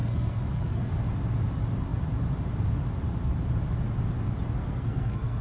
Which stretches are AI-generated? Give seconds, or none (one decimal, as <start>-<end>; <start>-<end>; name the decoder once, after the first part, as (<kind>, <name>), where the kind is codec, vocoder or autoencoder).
0.0-0.9 (codec, SNAC); 4.6-5.4